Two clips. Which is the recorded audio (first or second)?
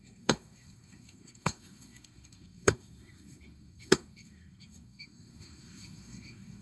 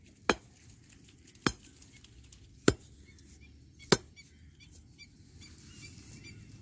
second